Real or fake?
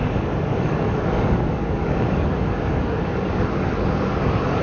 fake